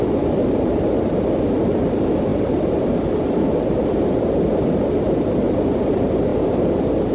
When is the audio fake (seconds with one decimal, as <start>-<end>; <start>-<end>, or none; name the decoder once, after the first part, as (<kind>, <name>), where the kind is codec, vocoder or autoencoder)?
0.0-7.1 (vocoder, BigVGAN v2)